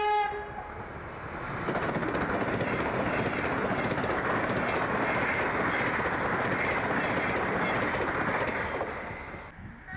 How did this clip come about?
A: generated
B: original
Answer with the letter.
B